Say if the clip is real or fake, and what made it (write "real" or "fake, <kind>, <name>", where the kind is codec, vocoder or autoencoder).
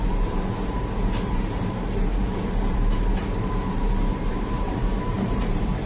fake, vocoder, BigVGAN v2